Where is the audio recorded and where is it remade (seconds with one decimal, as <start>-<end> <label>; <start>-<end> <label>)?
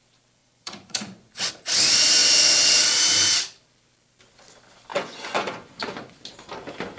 0.0-0.4 recorded; 0.4-1.5 remade; 1.5-4.9 recorded; 4.9-6.2 remade; 6.2-7.0 recorded